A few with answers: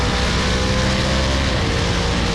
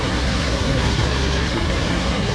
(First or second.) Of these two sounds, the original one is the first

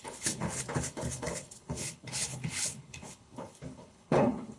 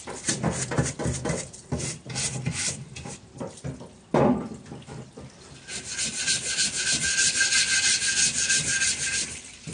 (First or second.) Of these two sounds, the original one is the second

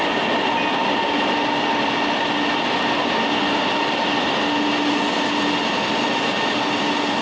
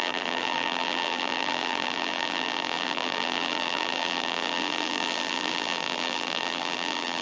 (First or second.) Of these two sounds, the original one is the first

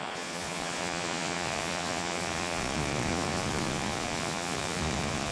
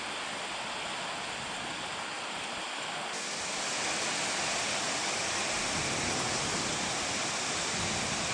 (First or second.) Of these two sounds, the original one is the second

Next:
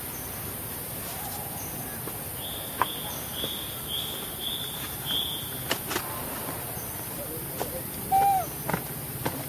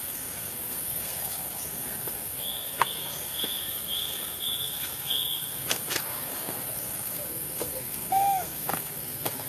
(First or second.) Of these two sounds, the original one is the first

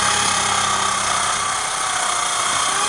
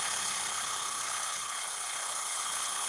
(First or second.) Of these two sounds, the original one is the first